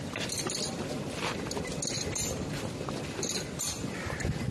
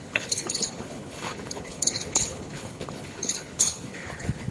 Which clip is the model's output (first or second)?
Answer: second